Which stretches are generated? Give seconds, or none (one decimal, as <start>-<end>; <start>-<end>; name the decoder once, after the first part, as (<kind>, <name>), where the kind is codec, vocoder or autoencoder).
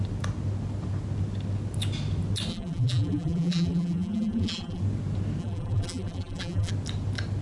2.5-4.8 (vocoder, BigVGAN v2); 5.4-6.7